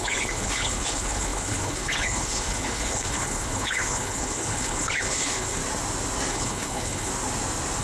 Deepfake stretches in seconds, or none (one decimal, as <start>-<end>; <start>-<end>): 0.0-5.6; 6.3-7.1